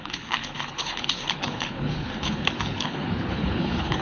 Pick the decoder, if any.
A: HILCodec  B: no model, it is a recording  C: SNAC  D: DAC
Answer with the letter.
A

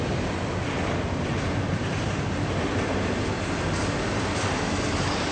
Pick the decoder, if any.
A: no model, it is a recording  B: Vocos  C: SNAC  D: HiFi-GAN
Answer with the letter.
A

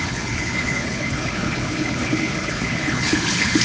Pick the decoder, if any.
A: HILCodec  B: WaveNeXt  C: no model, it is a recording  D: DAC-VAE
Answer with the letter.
A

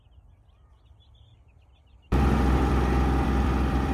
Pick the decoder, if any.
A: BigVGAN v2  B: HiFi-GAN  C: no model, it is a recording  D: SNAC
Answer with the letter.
A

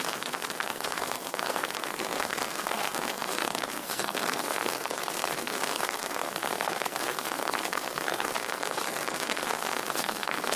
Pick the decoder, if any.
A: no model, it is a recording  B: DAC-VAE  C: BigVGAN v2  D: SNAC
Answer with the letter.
D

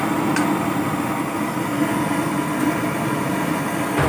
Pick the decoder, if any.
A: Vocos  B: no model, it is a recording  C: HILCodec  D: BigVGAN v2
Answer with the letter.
B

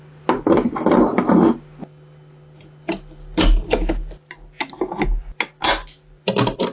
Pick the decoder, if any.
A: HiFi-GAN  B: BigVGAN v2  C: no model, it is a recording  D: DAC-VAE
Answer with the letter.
C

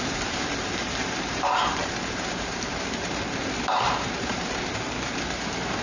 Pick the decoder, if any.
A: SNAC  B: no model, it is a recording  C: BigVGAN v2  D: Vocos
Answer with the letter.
C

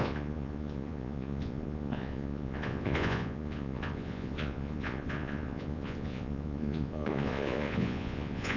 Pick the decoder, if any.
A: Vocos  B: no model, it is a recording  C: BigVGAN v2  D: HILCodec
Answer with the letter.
A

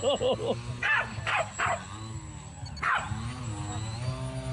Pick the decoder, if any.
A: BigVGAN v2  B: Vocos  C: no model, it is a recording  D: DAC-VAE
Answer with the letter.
C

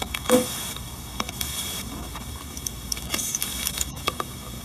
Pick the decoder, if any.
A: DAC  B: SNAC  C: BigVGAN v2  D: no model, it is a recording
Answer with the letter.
A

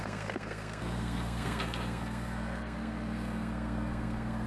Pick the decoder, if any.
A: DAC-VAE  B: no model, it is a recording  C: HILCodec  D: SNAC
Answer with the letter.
D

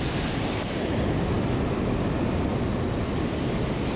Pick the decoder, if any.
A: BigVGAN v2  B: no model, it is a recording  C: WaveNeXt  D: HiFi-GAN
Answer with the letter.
B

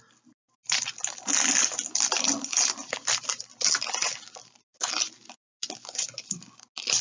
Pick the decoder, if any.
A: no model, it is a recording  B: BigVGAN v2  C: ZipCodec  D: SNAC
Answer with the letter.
A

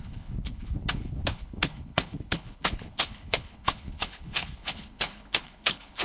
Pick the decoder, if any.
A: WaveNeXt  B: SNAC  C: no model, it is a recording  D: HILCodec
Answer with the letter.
D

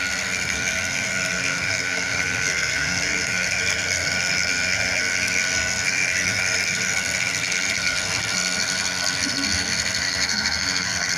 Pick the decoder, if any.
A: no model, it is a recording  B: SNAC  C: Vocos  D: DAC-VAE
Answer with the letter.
B